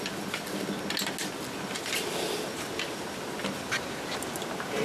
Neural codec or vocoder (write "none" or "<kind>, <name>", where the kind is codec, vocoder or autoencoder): none